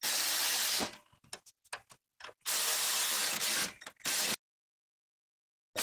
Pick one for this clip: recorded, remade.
recorded